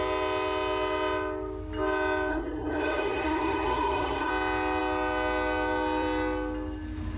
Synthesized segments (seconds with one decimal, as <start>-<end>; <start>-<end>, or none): 2.3-4.3